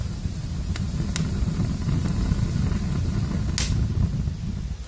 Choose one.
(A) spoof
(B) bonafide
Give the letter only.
B